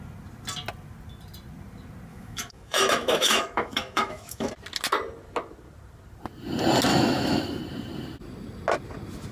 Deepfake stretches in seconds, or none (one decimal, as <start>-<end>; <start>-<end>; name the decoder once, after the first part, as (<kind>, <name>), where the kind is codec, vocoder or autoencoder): 2.1-4.5 (autoencoder, DAC-VAE); 6.9-7.6